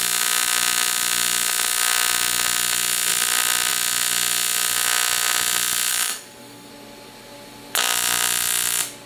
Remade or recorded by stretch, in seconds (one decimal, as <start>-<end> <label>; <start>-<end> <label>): 0.0-5.9 recorded; 5.9-6.7 remade; 6.7-9.1 recorded